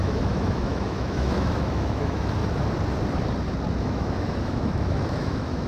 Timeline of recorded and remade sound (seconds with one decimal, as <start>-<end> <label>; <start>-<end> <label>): 0.0-2.4 remade; 2.4-3.8 recorded; 3.8-5.7 remade